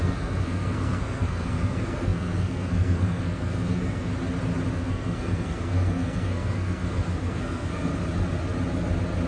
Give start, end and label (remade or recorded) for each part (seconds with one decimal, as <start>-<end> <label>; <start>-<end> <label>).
0.0-4.1 remade; 4.1-4.7 recorded; 4.7-7.9 remade; 7.9-9.3 recorded